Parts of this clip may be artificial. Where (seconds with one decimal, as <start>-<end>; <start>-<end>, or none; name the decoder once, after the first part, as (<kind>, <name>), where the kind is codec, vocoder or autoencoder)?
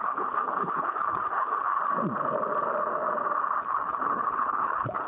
0.0-1.8 (codec, HILCodec); 3.7-5.1